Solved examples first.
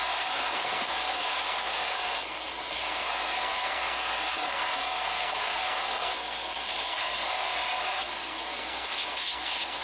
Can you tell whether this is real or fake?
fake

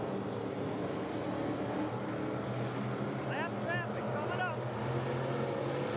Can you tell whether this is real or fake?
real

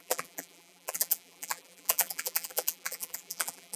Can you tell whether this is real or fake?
fake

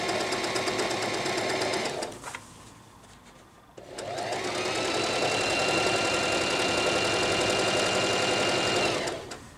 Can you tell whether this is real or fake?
real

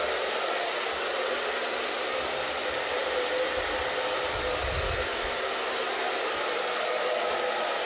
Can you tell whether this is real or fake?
real